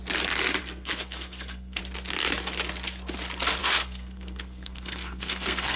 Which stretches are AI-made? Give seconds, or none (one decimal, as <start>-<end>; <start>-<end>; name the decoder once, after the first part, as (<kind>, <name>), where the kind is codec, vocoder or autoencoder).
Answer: 0.6-1.8 (codec, SNAC); 3.6-5.8